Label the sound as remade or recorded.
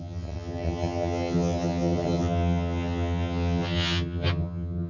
remade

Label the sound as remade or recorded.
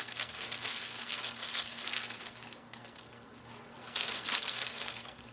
remade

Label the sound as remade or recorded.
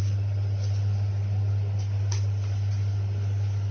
recorded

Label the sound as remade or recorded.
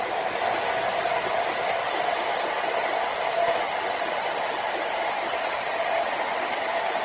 recorded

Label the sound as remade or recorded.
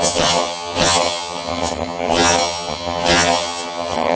remade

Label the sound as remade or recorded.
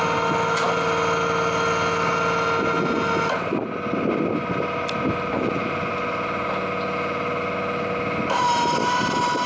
recorded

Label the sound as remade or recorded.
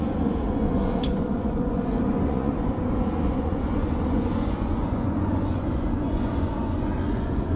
remade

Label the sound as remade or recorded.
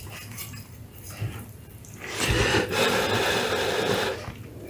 remade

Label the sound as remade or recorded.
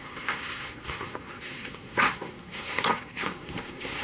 remade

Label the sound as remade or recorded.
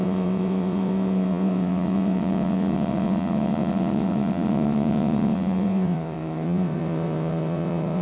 remade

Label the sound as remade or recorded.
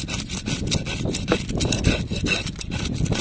recorded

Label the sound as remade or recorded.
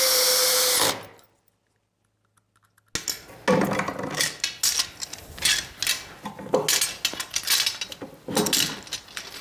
recorded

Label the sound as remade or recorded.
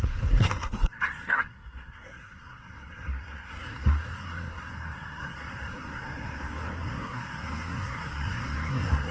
remade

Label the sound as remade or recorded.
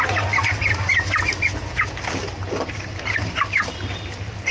recorded